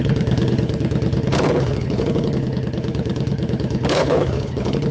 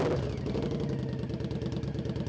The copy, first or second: first